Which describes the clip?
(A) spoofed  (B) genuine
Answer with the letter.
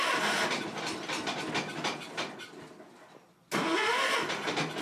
B